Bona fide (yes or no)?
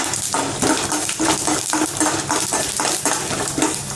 yes